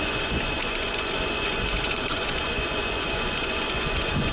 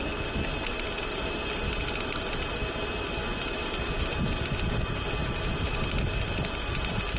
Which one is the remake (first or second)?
first